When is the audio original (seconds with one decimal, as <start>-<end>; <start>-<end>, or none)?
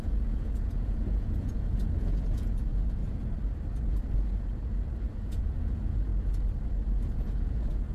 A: 3.0-5.2; 6.1-7.0